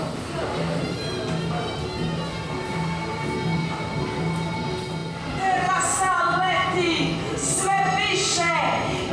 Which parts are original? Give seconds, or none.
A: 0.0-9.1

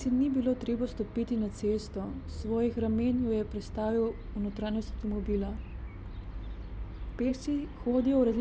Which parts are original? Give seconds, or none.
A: 0.0-8.4

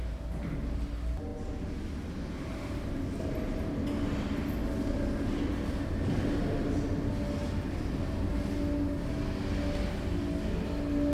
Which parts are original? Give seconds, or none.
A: 0.0-11.1

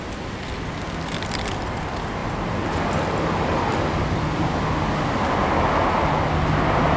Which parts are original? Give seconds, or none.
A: 0.0-7.0